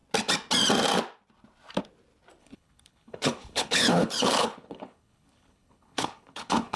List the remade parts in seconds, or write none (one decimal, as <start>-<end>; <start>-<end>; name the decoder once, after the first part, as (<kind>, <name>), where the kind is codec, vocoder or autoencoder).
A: 2.4-6.8 (codec, HILCodec)